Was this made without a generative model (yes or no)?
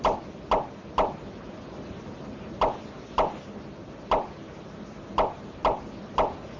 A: yes